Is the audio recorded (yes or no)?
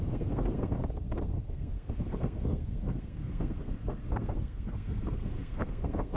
no